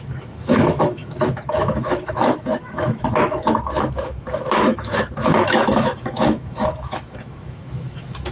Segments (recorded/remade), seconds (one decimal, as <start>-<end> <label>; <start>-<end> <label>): 0.0-8.3 remade